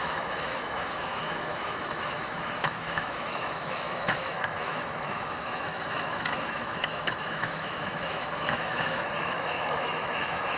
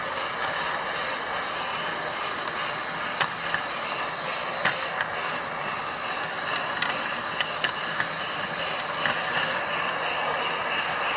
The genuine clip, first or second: second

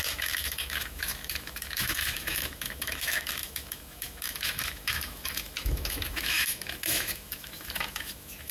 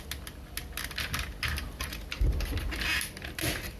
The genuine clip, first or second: second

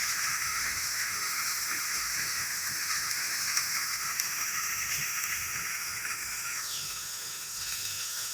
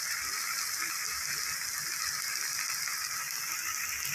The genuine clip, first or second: second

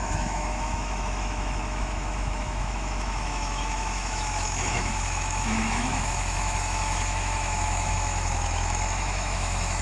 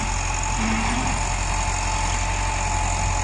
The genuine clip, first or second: second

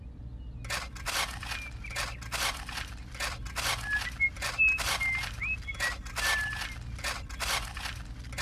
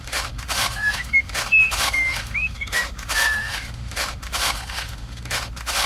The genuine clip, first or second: first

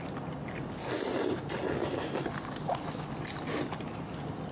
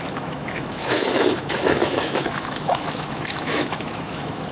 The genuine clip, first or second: first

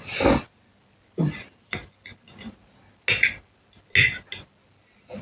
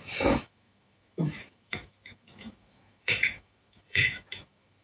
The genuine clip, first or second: first